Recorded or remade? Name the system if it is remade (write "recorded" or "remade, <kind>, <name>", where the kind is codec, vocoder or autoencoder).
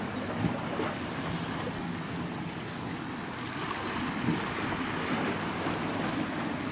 recorded